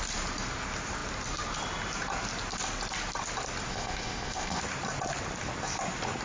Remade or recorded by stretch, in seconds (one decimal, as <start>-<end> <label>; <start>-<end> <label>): 0.0-3.7 recorded; 3.7-4.6 remade; 4.6-6.2 recorded